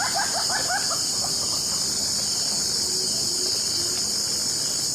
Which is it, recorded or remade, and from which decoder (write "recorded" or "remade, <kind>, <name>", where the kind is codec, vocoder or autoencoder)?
recorded